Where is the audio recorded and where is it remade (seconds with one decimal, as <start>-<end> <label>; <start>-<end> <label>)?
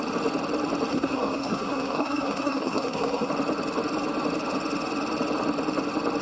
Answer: 0.0-0.9 recorded; 0.9-3.3 remade; 3.3-6.2 recorded